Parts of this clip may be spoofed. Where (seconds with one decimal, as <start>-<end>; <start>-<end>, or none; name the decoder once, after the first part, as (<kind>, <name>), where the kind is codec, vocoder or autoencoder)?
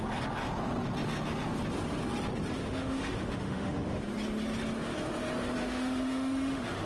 2.6-4.0 (autoencoder, DAC-VAE); 5.6-6.9